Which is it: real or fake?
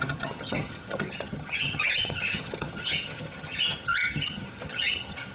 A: fake